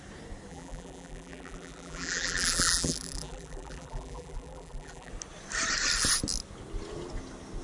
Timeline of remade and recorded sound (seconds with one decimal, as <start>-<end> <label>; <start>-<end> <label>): 0.0-0.5 recorded; 0.5-5.1 remade; 5.1-7.6 recorded